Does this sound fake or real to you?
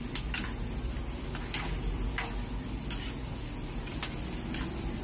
real